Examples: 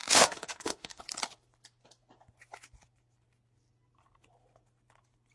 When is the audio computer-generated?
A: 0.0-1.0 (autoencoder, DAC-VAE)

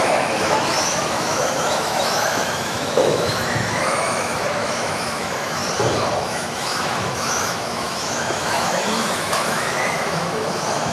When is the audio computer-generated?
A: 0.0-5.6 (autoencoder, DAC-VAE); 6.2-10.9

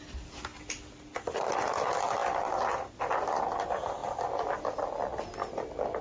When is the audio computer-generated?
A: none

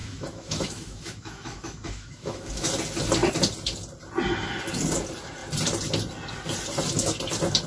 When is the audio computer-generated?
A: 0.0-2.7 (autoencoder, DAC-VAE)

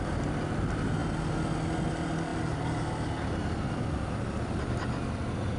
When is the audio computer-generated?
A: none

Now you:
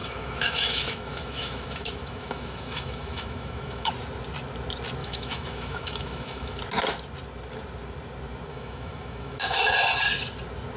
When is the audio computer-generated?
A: 0.0-3.9 (autoencoder, DAC-VAE); 5.0-6.6; 8.5-9.7